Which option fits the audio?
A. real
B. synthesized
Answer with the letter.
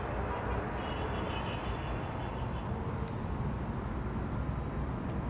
A